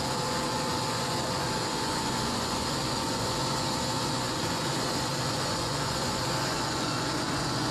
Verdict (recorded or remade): remade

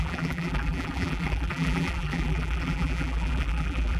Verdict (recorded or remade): remade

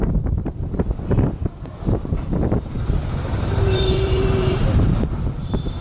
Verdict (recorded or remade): remade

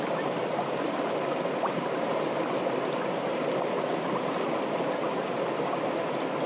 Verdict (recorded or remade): recorded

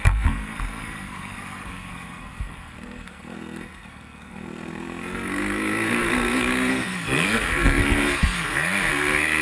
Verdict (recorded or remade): remade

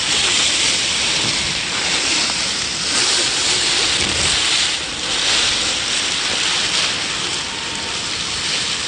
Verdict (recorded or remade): recorded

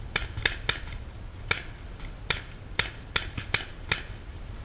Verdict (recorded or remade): recorded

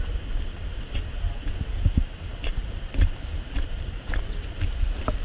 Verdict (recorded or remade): recorded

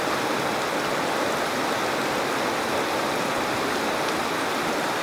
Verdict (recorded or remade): recorded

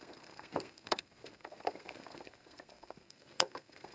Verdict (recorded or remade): remade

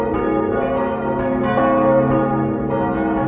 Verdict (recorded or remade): recorded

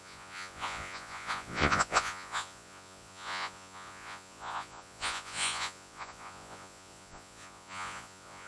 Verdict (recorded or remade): remade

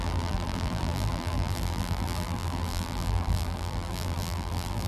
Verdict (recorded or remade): remade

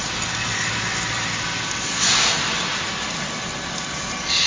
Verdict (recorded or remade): recorded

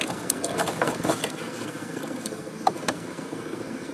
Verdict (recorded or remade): remade